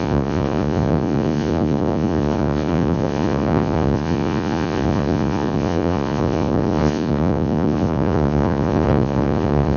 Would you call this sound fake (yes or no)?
yes